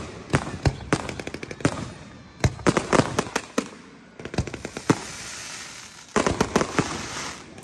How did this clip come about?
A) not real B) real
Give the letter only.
B